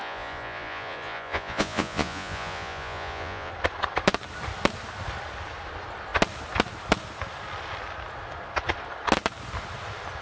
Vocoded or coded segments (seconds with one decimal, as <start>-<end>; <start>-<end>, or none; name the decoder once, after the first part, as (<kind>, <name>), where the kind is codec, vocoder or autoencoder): 0.0-3.5 (vocoder, Vocos)